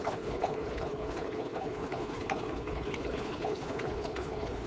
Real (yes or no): no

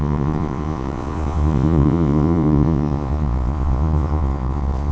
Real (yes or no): no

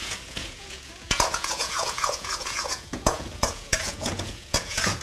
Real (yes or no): no